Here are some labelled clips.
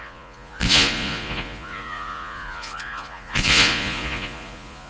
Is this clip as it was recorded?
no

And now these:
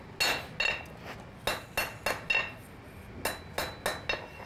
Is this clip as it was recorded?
yes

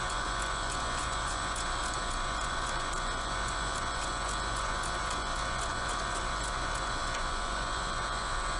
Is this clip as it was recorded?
no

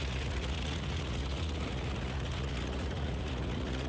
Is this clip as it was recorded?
no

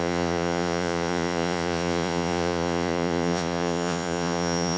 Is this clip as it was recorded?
no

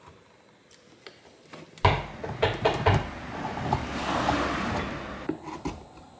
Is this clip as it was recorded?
yes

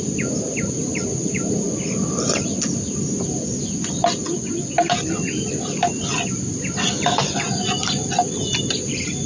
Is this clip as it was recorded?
yes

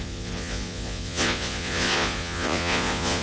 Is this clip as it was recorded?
no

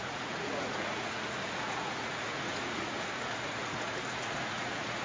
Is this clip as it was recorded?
no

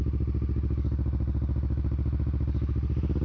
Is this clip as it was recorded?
yes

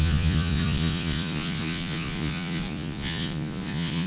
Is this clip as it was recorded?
no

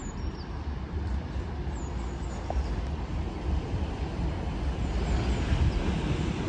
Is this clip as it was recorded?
yes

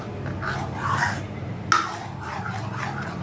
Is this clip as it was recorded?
yes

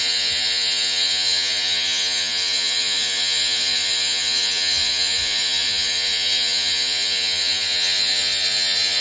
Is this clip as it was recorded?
no